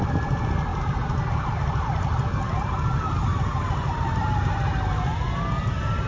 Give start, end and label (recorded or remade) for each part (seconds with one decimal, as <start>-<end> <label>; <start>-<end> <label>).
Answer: 0.0-6.1 recorded